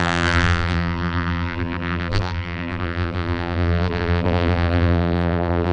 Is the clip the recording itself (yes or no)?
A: no